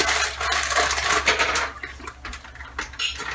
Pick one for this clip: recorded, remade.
recorded